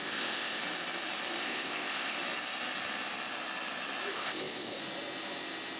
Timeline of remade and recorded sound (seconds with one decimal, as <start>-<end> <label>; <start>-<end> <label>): 0.0-0.6 remade; 0.6-1.4 recorded; 1.4-2.2 remade; 2.2-4.1 recorded; 4.1-4.8 remade; 4.8-5.8 recorded